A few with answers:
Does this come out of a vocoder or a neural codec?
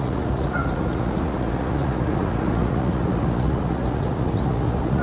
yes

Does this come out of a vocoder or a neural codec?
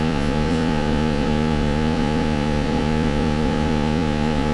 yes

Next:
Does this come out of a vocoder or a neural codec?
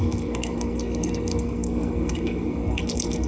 yes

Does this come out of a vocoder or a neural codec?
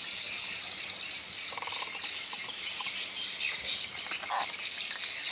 no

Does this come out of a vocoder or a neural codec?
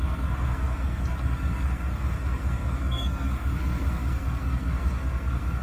yes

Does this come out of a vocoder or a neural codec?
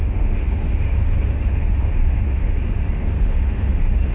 yes